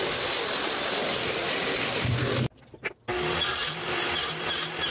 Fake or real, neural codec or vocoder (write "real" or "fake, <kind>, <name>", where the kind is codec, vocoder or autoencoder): real